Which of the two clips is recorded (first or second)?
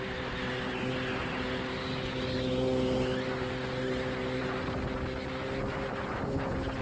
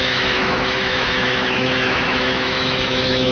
first